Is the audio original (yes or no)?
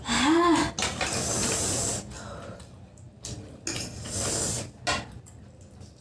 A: yes